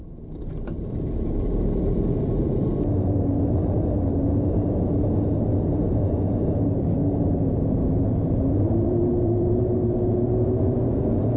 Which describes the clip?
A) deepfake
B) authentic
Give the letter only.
A